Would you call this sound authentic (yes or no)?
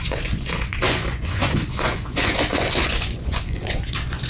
no